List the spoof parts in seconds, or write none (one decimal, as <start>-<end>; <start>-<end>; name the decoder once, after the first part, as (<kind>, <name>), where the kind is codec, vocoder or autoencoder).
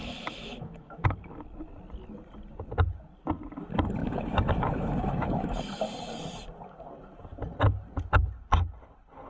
0.0-1.1 (autoencoder, DAC-VAE); 4.0-5.8